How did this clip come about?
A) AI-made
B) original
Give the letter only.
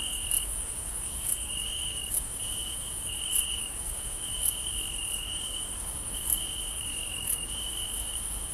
A